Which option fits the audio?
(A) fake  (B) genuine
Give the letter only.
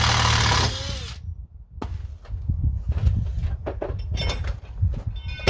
B